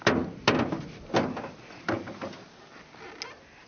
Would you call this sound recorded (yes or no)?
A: yes